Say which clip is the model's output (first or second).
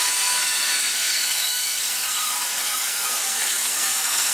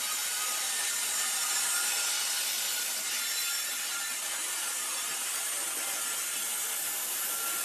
first